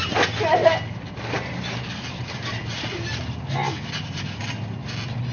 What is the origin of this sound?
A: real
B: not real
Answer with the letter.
A